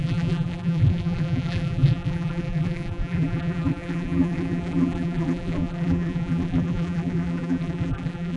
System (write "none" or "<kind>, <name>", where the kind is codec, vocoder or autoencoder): vocoder, BigVGAN v2